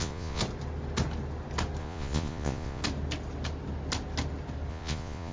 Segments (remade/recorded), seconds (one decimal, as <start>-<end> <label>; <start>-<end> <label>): 0.0-0.4 remade; 0.4-1.8 recorded; 1.8-2.8 remade; 2.8-4.7 recorded; 4.7-5.3 remade